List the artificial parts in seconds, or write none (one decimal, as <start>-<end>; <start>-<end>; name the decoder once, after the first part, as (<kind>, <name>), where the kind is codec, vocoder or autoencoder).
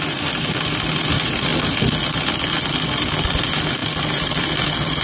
none